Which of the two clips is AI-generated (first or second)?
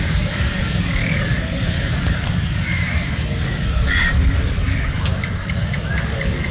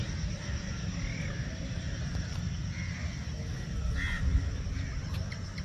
first